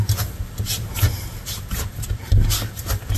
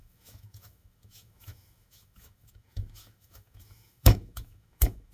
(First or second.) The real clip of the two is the first